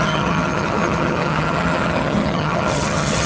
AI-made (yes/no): yes